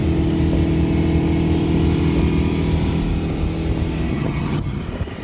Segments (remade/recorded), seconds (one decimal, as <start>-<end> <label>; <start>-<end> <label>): 0.0-4.1 recorded; 4.1-4.8 remade; 4.8-5.2 recorded